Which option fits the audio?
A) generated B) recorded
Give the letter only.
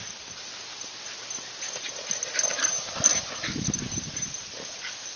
B